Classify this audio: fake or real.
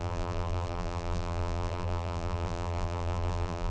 fake